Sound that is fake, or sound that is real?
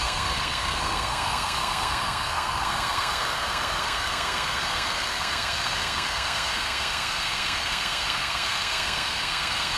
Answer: fake